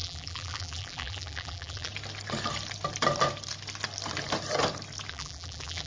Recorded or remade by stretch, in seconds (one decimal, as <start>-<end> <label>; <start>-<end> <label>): 0.0-1.9 remade; 1.9-5.1 recorded; 5.1-5.9 remade